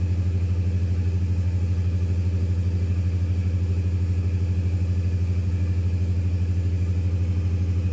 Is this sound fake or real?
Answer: real